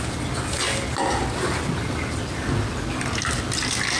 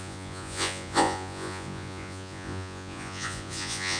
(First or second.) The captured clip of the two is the first